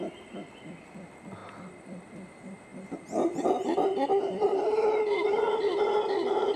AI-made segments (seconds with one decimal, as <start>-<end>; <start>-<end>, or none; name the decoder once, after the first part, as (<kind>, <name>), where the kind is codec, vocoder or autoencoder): none